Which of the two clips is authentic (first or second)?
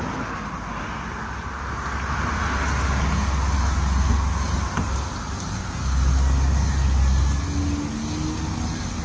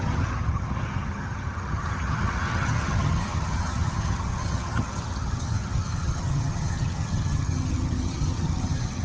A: first